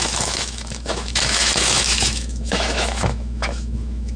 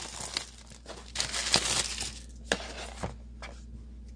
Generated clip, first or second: first